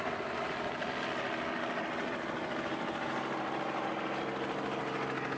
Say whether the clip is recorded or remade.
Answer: recorded